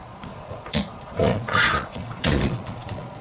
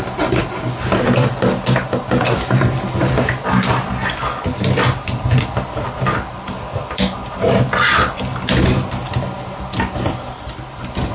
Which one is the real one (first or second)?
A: second